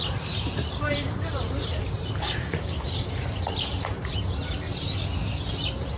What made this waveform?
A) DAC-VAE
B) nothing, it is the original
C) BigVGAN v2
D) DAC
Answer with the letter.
C